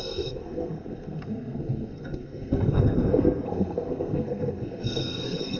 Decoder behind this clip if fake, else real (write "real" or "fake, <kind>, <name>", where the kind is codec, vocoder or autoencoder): fake, codec, SNAC